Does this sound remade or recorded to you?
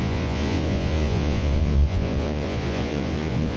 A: remade